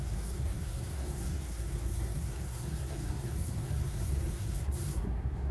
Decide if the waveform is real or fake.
fake